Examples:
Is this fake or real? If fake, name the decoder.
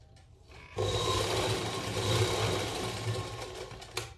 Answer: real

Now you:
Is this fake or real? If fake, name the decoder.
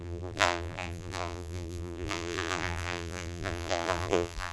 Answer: fake, vocoder, BigVGAN v2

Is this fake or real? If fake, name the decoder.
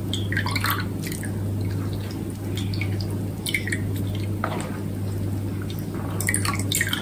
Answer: real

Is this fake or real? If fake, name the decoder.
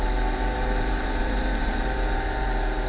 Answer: fake, vocoder, BigVGAN v2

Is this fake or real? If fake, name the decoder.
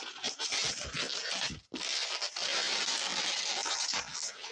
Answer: real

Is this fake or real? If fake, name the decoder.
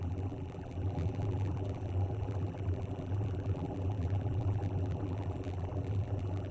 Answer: fake, vocoder, BigVGAN v2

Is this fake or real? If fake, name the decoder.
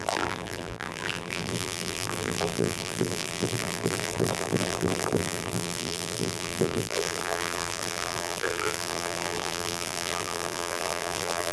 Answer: fake, vocoder, BigVGAN v2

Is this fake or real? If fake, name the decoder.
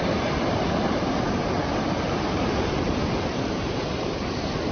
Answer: fake, vocoder, BigVGAN v2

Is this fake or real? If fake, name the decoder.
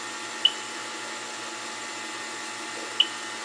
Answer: real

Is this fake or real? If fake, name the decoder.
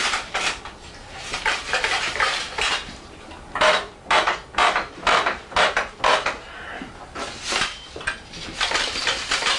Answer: fake, vocoder, BigVGAN v2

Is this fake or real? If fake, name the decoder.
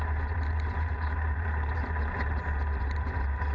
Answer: fake, vocoder, BigVGAN v2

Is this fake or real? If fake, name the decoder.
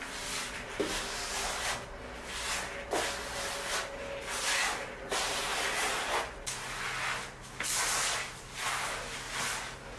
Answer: real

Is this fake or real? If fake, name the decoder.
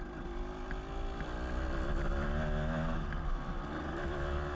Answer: real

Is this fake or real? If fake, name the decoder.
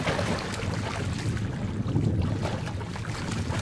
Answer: real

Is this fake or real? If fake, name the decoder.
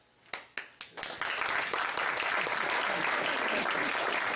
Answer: real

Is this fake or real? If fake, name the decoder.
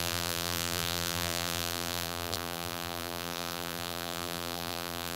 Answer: fake, vocoder, BigVGAN v2